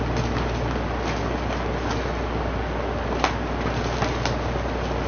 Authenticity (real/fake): real